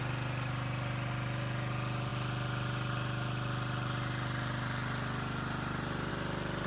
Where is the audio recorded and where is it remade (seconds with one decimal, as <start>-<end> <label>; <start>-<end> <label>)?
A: 0.0-6.7 recorded